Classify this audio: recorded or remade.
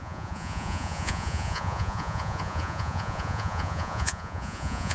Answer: remade